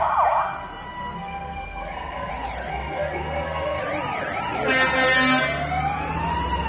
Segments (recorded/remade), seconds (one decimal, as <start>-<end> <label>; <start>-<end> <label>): 0.0-1.0 recorded; 1.0-2.3 remade; 2.3-2.7 recorded; 2.7-3.8 remade; 3.8-6.7 recorded